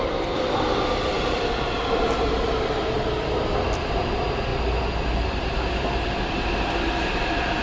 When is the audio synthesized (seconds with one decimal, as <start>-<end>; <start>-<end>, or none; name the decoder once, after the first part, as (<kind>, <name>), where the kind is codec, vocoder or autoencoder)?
none